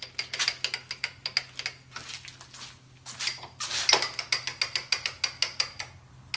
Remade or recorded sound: recorded